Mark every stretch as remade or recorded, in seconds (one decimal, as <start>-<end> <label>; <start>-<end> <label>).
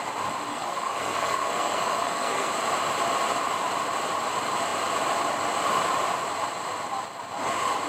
0.0-0.5 recorded; 0.5-2.5 remade; 2.5-7.9 recorded